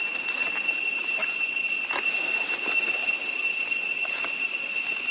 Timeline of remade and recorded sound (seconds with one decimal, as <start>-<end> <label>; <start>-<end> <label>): 0.0-3.0 recorded; 3.0-5.1 remade

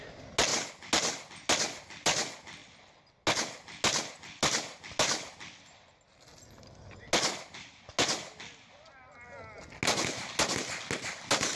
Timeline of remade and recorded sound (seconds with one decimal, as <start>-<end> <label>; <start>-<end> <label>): 0.0-11.6 recorded